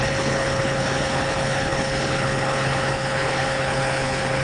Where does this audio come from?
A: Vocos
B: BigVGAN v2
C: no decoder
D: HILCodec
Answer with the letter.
D